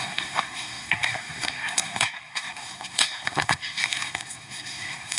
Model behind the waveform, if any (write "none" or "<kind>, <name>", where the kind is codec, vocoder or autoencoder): codec, SNAC